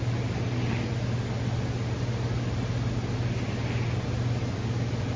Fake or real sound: real